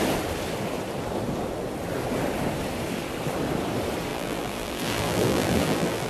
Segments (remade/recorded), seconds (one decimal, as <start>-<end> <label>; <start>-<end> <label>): 0.0-4.1 recorded; 4.1-6.1 remade